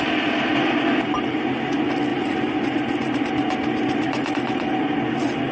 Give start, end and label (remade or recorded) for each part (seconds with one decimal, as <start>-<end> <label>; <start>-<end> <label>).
0.0-5.5 recorded